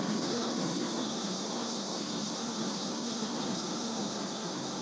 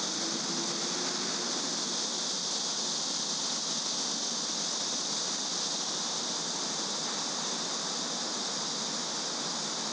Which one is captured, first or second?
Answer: second